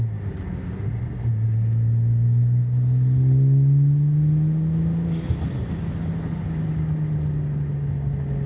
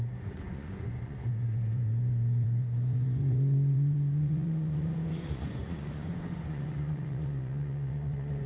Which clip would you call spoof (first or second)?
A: second